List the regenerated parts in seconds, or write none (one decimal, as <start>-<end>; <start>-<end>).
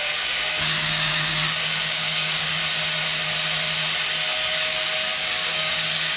0.0-2.6; 4.6-6.2